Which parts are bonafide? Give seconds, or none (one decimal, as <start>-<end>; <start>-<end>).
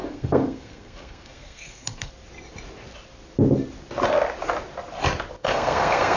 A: 2.1-5.4